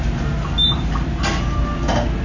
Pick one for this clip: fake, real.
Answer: real